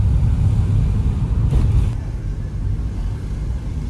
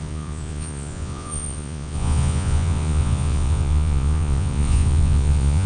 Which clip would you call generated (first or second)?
second